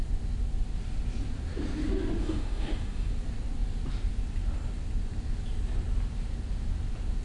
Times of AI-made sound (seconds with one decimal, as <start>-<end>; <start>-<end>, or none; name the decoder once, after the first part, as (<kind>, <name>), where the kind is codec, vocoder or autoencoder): 2.2-3.1 (codec, DAC)